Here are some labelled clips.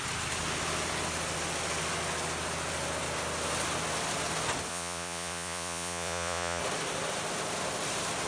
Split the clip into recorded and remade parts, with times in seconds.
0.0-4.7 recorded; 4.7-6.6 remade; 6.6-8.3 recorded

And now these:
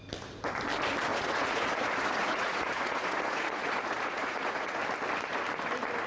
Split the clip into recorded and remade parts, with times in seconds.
0.0-1.1 recorded; 1.1-4.8 remade; 4.8-6.1 recorded

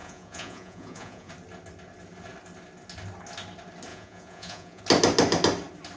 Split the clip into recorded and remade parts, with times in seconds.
0.0-1.3 remade; 1.3-3.9 recorded; 3.9-4.8 remade; 4.8-6.0 recorded